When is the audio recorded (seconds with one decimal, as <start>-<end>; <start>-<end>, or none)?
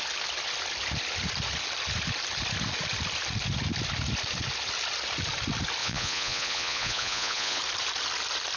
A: 0.0-5.8; 7.6-8.6